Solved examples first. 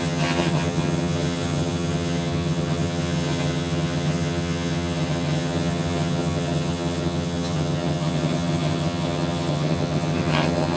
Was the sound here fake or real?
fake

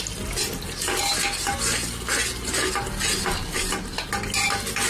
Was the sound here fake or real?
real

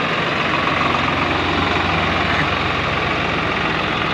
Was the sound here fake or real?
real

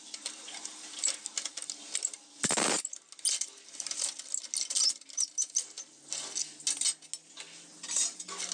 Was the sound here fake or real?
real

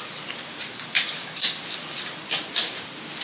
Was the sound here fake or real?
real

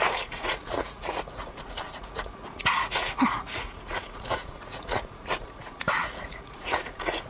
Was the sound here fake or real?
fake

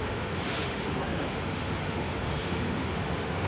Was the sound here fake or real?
fake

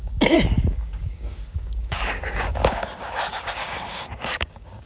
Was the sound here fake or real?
fake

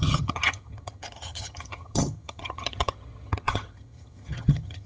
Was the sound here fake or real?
fake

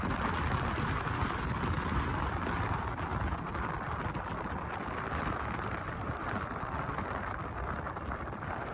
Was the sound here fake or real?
fake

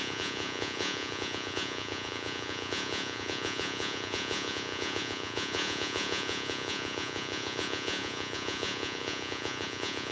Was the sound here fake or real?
fake